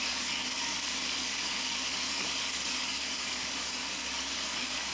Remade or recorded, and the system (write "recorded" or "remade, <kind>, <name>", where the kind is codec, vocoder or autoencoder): remade, codec, DAC